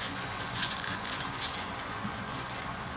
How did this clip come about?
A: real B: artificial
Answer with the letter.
B